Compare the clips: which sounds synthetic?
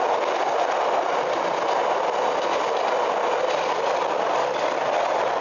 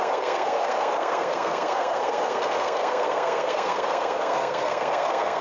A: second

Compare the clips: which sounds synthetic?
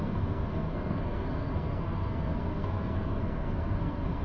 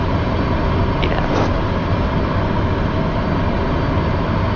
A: first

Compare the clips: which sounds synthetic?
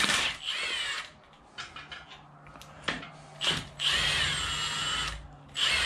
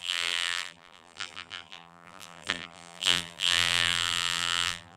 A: second